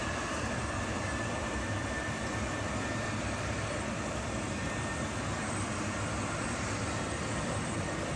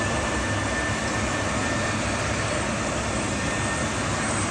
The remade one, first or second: first